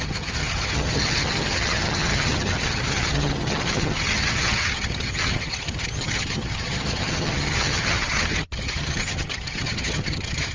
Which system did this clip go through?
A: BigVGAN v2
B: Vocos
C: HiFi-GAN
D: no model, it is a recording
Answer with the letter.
C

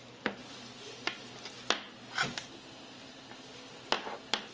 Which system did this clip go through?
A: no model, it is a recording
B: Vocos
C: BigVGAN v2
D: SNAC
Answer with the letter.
A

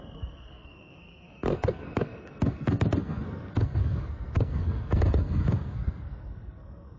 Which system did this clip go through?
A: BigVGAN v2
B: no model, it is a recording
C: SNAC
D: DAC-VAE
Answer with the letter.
C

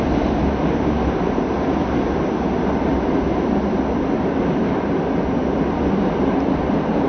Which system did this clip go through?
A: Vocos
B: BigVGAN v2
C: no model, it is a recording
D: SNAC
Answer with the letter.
C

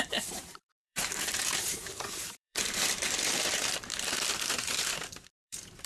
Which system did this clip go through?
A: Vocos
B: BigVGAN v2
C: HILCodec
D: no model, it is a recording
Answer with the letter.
B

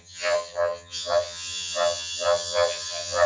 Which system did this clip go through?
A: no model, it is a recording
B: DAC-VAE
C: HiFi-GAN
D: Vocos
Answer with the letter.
C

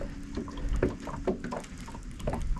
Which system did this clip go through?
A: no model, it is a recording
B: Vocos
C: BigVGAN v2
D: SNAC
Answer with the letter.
A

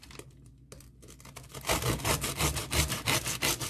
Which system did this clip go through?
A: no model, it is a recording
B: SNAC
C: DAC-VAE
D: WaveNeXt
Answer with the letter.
A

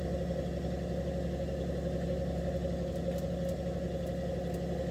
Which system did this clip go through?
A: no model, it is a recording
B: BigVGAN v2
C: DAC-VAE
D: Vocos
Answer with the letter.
A